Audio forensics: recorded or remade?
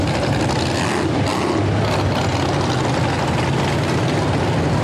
recorded